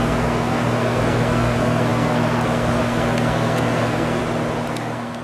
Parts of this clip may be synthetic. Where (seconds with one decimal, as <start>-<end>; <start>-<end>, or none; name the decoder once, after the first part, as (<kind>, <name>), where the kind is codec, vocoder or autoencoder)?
0.0-4.2 (codec, SNAC); 4.7-5.2